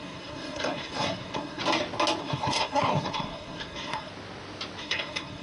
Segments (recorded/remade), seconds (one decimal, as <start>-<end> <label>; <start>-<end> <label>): 0.0-1.6 remade; 1.6-2.2 recorded; 2.2-4.1 remade; 4.1-4.8 recorded; 4.8-5.4 remade